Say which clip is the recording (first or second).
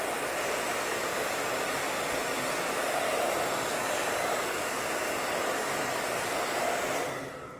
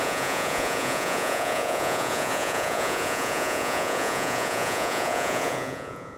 first